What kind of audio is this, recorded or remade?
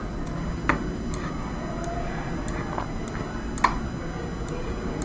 recorded